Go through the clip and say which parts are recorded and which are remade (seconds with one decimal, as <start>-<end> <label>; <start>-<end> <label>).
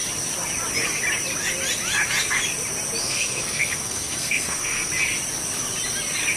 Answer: 0.0-3.0 recorded; 3.0-4.9 remade; 4.9-6.4 recorded